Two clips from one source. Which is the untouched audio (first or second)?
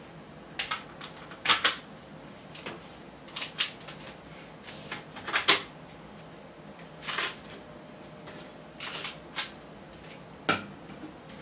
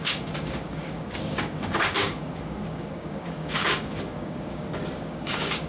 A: first